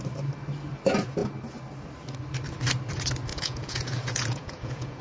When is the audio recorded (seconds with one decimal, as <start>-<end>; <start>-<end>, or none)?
0.0-3.3